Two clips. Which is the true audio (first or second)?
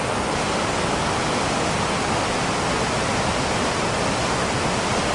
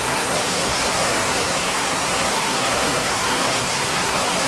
first